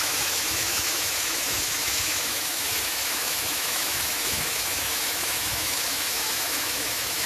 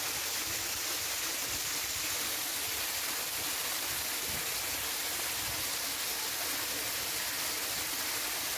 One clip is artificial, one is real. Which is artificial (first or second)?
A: first